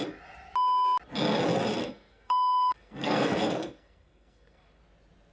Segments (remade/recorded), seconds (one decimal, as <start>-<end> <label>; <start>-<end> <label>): 0.0-1.8 recorded; 1.8-4.8 remade; 4.8-5.3 recorded